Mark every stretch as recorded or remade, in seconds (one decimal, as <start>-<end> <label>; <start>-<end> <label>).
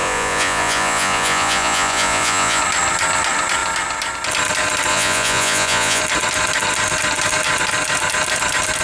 0.0-2.6 remade; 2.6-4.9 recorded; 4.9-6.0 remade; 6.0-8.8 recorded